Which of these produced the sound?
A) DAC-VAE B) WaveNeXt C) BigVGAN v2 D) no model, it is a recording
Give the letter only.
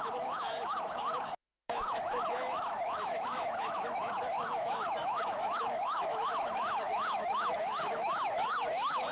A